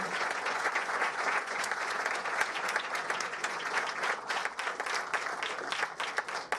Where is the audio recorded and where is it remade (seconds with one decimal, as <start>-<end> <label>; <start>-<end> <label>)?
0.0-4.4 remade; 4.4-6.6 recorded